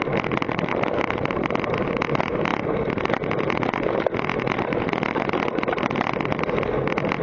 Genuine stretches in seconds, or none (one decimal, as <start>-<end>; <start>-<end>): 0.0-7.2